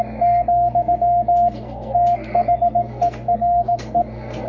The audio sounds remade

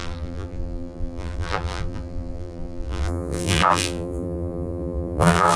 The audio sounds remade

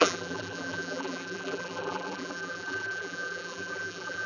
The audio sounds remade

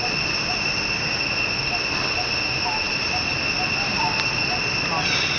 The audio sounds recorded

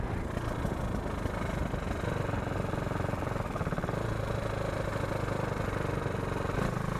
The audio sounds recorded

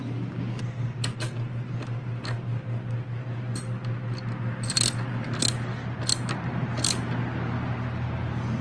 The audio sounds recorded